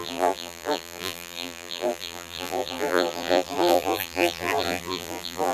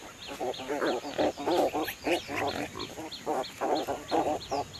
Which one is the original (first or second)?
second